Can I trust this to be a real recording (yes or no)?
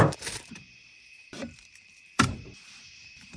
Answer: no